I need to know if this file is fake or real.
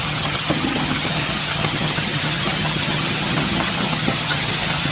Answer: fake